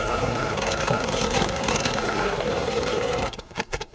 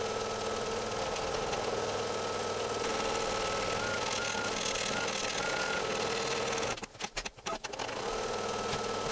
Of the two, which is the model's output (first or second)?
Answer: first